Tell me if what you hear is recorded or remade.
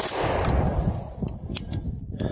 recorded